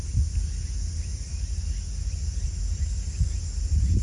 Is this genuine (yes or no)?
yes